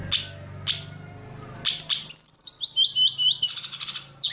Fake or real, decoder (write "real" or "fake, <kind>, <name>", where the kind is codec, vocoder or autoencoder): real